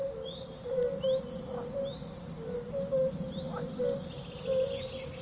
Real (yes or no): yes